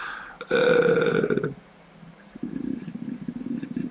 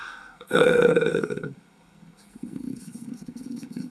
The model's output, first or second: second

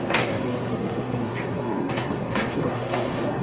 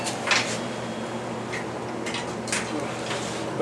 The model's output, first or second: first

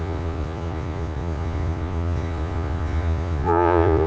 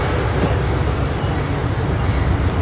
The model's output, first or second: first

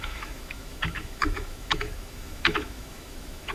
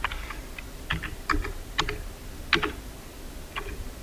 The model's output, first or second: first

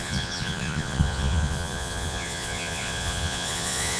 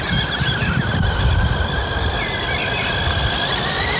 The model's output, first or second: first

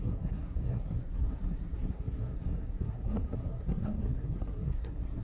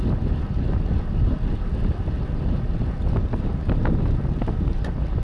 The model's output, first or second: first